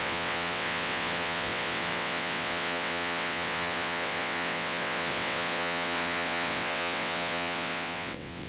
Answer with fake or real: fake